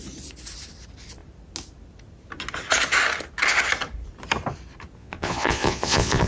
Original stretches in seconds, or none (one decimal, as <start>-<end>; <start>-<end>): 0.0-5.0